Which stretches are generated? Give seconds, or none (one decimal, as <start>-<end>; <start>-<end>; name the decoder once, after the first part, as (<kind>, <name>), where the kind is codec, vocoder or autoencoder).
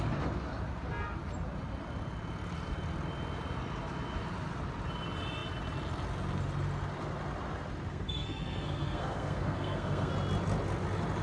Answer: 7.9-10.1 (codec, SNAC)